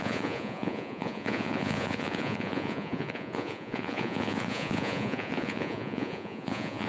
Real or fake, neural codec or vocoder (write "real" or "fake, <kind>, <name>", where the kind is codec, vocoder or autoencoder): fake, vocoder, Vocos